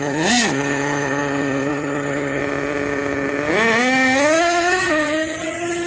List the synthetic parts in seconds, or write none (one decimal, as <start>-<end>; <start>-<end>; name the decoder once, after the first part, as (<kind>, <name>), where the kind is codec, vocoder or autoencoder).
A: 0.0-2.4 (vocoder, HiFi-GAN); 4.4-5.9

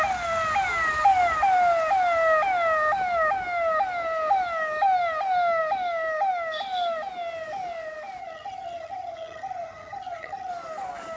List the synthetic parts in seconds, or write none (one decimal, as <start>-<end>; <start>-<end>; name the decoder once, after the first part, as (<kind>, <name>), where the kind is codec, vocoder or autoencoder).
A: 8.2-10.5 (vocoder, HiFi-GAN)